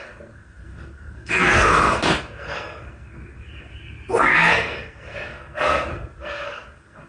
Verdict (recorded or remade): remade